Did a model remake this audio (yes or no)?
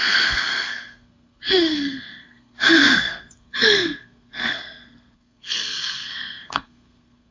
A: yes